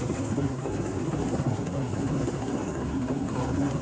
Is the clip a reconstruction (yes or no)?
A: yes